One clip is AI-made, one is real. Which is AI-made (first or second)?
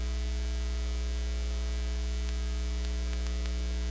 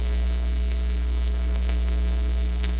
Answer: second